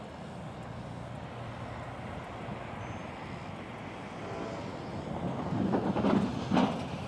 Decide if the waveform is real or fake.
real